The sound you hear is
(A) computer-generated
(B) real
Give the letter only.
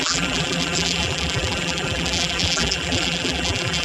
A